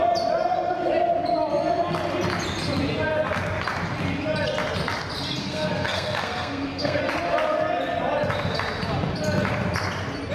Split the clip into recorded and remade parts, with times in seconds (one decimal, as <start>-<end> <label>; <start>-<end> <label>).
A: 0.0-5.4 recorded; 5.4-7.0 remade; 7.0-10.3 recorded

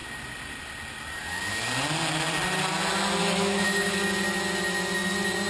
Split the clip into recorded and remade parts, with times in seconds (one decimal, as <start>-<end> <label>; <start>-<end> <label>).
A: 0.0-3.2 recorded; 3.2-3.9 remade; 3.9-5.5 recorded

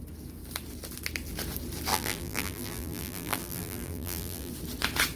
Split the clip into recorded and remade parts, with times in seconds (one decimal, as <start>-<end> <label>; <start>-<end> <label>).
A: 0.0-1.9 recorded; 1.9-4.5 remade; 4.5-5.2 recorded

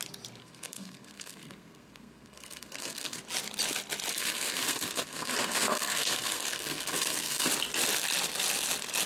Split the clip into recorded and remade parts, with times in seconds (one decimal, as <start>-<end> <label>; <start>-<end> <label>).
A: 0.0-0.4 recorded; 0.4-3.2 remade; 3.2-4.1 recorded; 4.1-7.5 remade; 7.5-9.1 recorded

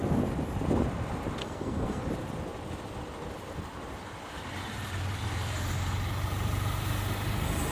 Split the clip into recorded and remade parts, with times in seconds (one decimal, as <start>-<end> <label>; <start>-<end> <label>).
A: 0.0-1.4 recorded; 1.4-2.0 remade; 2.0-7.7 recorded

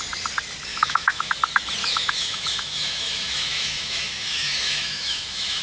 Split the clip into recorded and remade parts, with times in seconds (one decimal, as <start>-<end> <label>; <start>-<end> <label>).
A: 0.0-0.7 recorded; 0.7-1.3 remade; 1.3-1.8 recorded; 1.8-5.6 remade

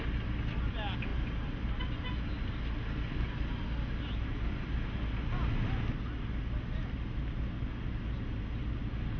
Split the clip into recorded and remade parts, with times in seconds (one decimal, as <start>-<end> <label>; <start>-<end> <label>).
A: 0.0-9.2 recorded